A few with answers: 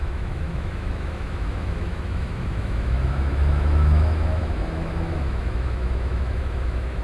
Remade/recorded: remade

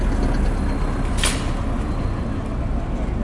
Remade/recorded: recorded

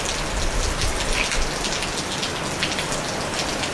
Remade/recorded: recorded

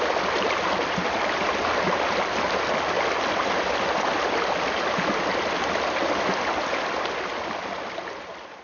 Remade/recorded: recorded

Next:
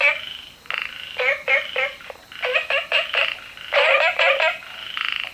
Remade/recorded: recorded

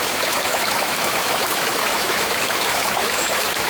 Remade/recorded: remade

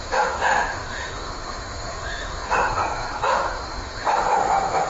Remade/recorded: remade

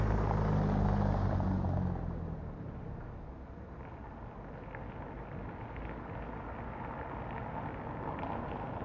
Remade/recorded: recorded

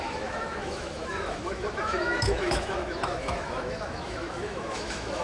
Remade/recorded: remade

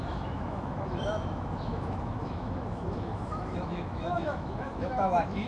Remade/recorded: remade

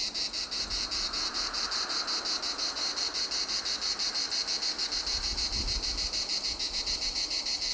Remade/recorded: recorded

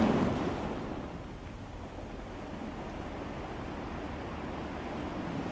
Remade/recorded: recorded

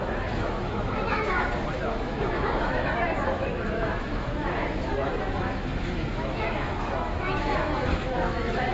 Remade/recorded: remade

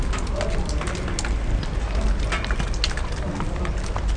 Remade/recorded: recorded